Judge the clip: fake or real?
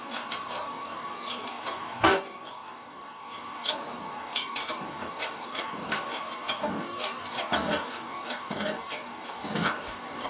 fake